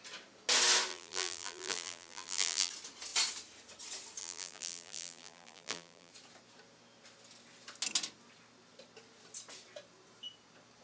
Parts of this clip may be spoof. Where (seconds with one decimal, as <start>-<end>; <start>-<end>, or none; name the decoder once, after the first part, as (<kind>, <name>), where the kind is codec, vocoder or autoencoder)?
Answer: 0.9-2.7 (vocoder, BigVGAN v2); 4.2-6.1